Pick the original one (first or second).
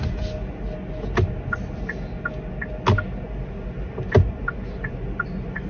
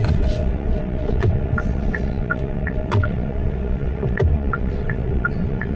first